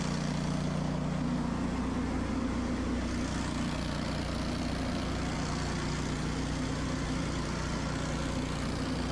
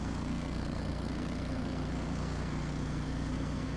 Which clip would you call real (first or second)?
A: first